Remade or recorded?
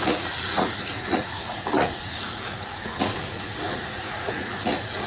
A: remade